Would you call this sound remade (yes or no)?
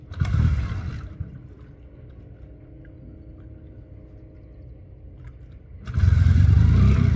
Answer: no